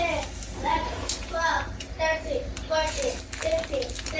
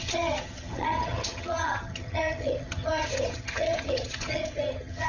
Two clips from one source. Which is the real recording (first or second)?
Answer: first